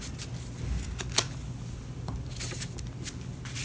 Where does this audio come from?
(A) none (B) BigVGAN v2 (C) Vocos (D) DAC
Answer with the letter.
A